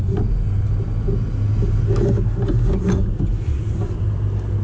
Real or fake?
real